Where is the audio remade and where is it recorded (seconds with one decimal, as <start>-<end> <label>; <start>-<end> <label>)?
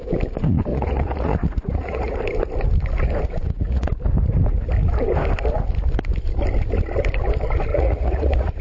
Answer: 0.0-0.7 recorded; 0.7-2.2 remade; 2.2-3.3 recorded; 3.3-3.9 remade; 3.9-7.7 recorded; 7.7-8.6 remade